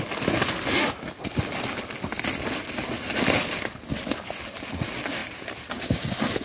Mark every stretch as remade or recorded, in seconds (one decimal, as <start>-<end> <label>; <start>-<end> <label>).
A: 0.0-6.4 recorded

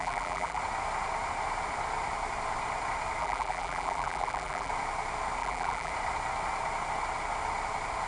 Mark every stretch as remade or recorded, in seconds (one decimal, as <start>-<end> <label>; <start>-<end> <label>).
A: 0.0-0.6 remade; 0.6-3.2 recorded; 3.2-4.7 remade; 4.7-5.4 recorded; 5.4-5.9 remade; 5.9-8.1 recorded

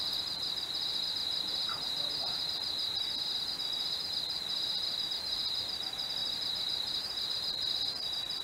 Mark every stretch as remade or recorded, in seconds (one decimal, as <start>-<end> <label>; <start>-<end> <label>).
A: 0.0-8.4 remade

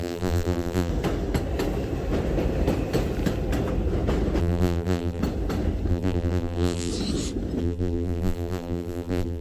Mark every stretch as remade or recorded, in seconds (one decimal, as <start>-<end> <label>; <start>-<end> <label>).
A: 0.0-0.9 remade; 0.9-4.4 recorded; 4.4-5.2 remade; 5.2-5.9 recorded; 5.9-6.9 remade; 6.9-7.6 recorded; 7.6-9.4 remade

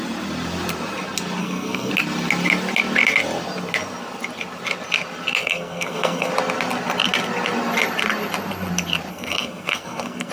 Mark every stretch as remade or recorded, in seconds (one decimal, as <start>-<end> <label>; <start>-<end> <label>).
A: 0.0-1.4 recorded; 1.4-1.9 remade; 1.9-5.4 recorded; 5.4-6.3 remade; 6.3-9.1 recorded; 9.1-10.3 remade

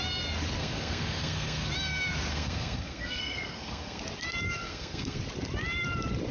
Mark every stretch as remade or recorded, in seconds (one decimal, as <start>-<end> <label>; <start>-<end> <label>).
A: 0.0-0.6 recorded; 0.6-1.7 remade; 1.7-2.3 recorded; 2.3-4.0 remade; 4.0-4.6 recorded; 4.6-5.2 remade; 5.2-6.3 recorded

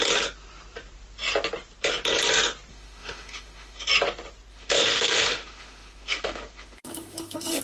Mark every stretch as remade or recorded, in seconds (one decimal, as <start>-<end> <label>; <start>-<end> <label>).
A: 0.0-2.7 recorded; 2.7-3.9 remade; 3.9-4.5 recorded; 4.5-7.6 remade

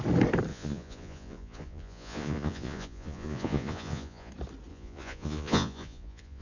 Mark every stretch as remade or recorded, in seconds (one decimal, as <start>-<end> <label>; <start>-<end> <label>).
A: 0.0-0.5 recorded; 0.5-4.3 remade; 4.3-4.7 recorded; 4.7-6.4 remade